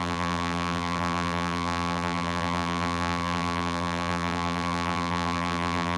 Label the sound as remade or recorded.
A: remade